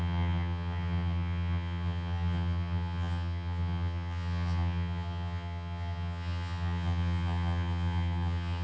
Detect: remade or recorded remade